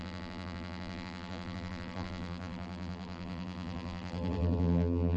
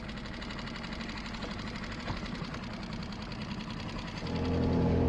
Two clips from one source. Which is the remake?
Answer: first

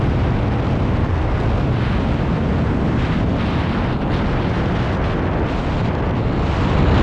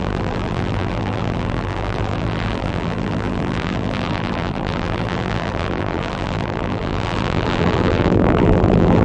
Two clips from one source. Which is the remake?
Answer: second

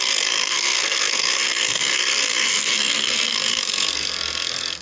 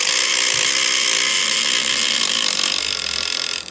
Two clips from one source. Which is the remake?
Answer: first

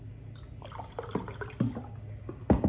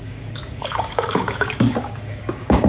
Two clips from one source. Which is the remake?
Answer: second